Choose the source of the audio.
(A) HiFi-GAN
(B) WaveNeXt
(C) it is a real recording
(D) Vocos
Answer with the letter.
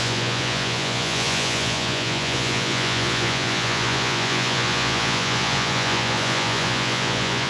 D